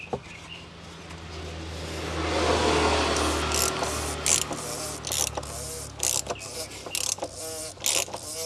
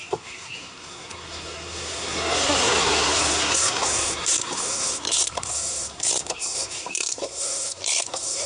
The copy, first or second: second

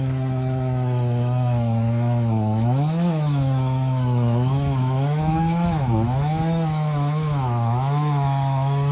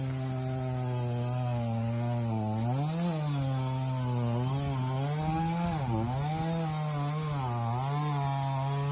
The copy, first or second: first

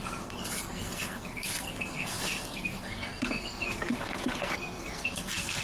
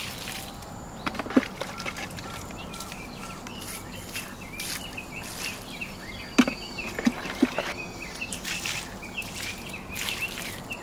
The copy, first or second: first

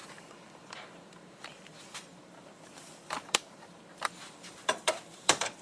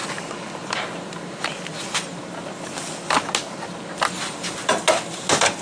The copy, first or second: first